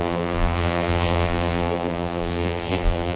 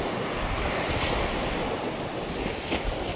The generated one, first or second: first